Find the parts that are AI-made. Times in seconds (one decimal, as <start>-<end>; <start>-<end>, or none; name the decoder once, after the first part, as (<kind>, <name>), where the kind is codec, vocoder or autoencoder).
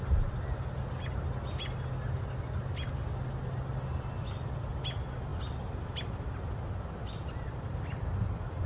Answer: none